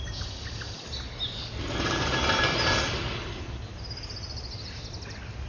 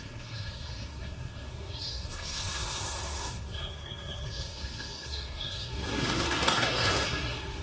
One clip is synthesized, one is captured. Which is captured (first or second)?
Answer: first